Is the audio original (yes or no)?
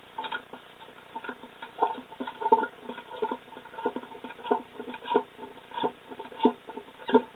no